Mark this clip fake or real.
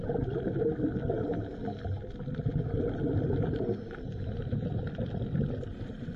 real